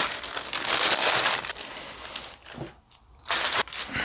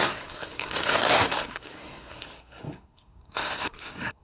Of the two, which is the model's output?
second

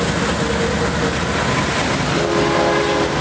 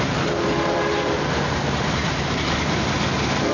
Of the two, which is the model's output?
second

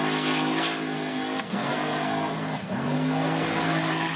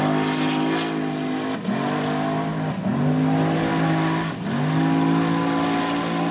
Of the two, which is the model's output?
first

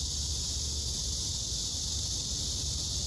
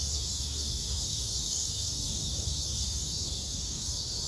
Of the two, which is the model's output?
second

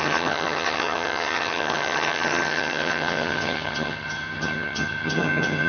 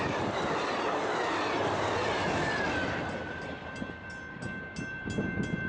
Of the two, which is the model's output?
first